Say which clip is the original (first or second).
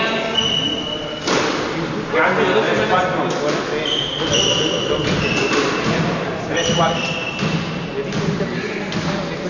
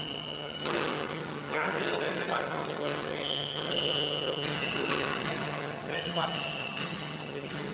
first